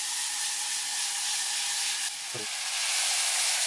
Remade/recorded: recorded